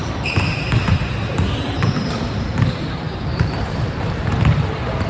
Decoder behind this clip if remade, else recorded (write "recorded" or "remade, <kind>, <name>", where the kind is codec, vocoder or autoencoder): remade, vocoder, BigVGAN v2